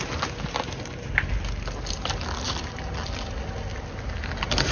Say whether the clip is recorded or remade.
recorded